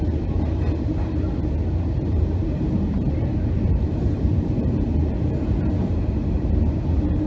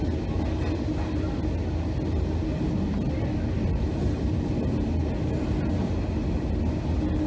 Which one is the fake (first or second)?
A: first